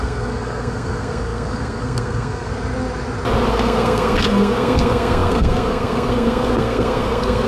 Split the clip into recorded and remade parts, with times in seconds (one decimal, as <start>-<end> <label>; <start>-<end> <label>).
0.0-2.5 remade; 2.5-3.5 recorded; 3.5-7.5 remade